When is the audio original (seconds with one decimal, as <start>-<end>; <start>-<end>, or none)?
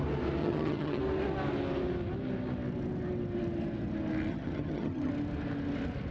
0.0-0.4; 1.0-4.3; 5.1-6.1